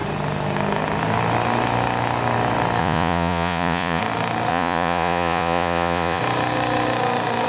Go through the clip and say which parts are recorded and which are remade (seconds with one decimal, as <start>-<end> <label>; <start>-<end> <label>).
0.0-2.8 recorded; 2.8-4.0 remade; 4.0-4.5 recorded; 4.5-6.2 remade; 6.2-7.5 recorded